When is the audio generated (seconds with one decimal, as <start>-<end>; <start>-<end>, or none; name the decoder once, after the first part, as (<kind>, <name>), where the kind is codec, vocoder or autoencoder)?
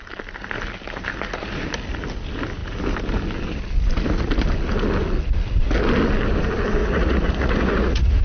6.8-8.2 (vocoder, Vocos)